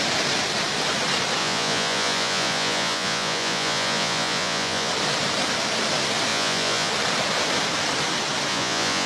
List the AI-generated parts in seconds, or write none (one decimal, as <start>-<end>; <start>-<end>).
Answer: 1.4-4.9; 6.3-6.9; 8.5-9.1